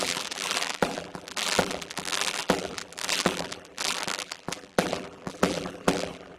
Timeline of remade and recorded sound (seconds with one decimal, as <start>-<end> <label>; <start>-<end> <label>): 0.0-6.4 remade